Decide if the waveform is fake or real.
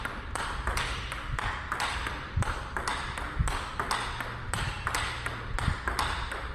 real